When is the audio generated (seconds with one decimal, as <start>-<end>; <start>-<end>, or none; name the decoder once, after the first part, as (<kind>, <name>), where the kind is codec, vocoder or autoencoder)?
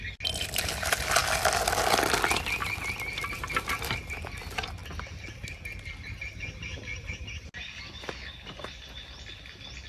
none